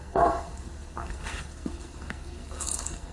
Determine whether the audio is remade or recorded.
remade